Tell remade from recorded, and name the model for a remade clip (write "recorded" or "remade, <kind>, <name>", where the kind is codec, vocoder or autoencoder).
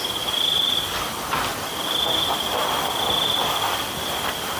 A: remade, vocoder, BigVGAN v2